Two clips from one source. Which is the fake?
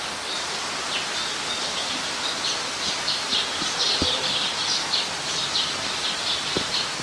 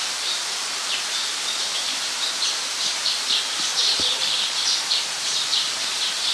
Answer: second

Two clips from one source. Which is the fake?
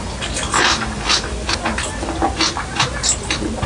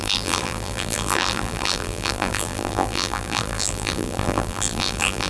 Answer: second